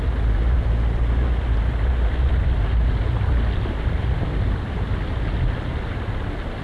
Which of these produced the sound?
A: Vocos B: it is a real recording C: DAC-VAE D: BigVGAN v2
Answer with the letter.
B